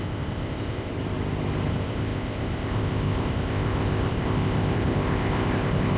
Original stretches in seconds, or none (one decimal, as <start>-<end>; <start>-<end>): 0.9-1.7